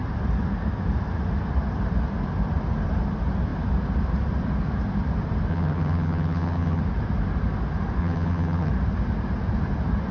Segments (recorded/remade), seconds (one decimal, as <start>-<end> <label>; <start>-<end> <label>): 0.0-5.5 recorded; 5.5-6.8 remade; 6.8-8.0 recorded; 8.0-8.7 remade; 8.7-10.1 recorded